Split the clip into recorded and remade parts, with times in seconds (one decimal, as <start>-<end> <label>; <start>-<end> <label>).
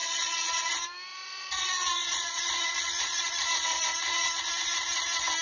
0.0-0.7 remade; 0.7-1.1 recorded; 1.1-4.3 remade; 4.3-5.4 recorded